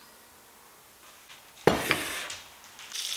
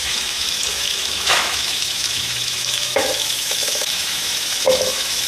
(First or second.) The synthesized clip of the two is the second